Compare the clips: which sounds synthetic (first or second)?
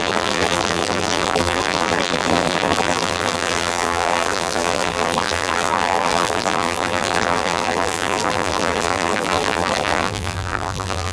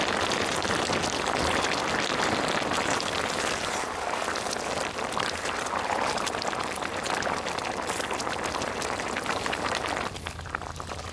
first